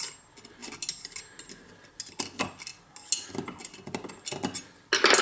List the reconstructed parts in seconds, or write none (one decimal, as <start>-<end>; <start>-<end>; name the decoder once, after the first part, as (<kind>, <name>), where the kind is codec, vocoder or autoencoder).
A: none